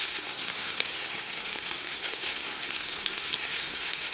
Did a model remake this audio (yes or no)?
yes